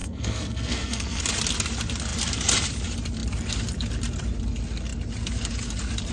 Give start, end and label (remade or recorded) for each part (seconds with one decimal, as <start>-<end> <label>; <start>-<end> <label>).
0.0-1.2 remade; 1.2-6.1 recorded